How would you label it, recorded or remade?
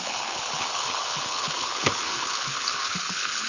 remade